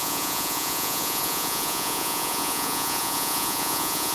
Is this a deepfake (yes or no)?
yes